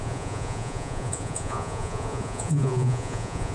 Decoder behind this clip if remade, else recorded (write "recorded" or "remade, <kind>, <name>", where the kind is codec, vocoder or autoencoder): remade, vocoder, Vocos